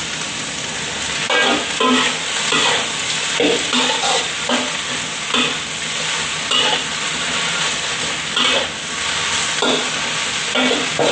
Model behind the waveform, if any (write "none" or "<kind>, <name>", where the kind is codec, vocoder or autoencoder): none